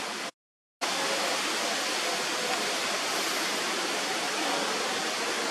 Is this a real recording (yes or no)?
yes